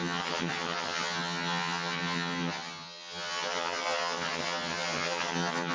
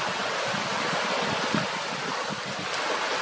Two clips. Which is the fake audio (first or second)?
first